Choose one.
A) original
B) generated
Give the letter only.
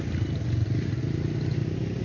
A